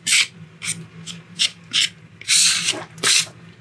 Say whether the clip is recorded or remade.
recorded